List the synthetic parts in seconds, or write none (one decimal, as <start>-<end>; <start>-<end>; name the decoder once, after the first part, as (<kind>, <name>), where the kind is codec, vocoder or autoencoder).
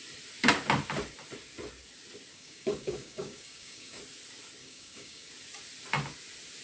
2.3-4.0 (codec, DAC); 4.6-5.3